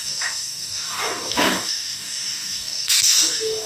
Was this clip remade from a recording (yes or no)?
yes